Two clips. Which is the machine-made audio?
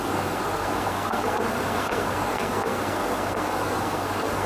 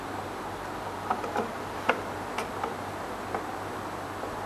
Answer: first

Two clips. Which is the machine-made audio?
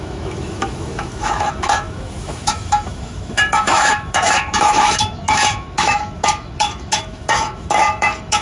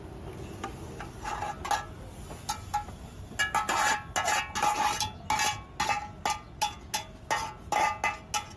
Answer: first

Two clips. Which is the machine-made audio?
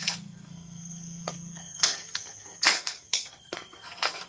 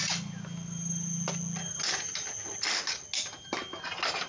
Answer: first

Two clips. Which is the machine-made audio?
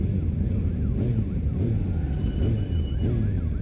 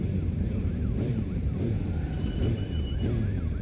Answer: second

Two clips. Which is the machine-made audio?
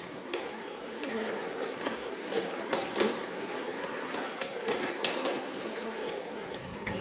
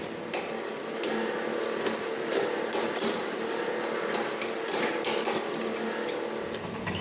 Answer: first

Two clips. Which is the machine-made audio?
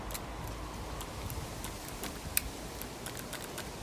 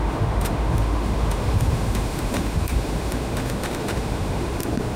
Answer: second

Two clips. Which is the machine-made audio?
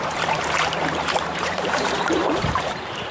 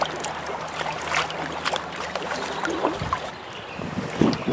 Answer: first